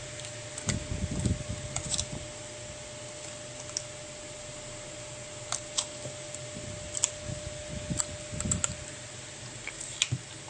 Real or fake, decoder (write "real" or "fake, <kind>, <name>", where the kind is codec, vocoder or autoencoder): real